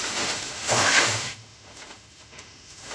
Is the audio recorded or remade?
remade